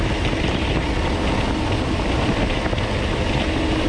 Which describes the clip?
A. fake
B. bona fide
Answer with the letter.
B